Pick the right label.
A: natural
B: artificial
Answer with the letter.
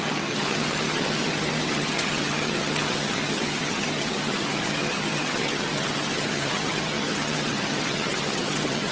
B